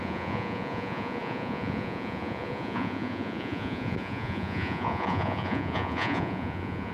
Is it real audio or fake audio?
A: fake